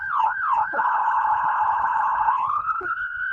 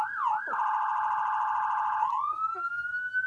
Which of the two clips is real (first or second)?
second